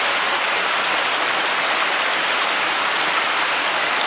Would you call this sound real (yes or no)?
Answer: yes